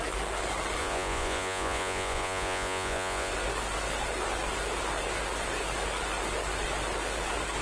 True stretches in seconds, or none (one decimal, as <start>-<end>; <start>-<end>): 0.0-0.8; 3.3-7.6